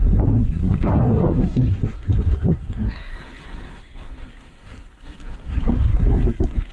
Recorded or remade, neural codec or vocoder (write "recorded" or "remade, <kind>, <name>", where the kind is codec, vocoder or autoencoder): remade, codec, SNAC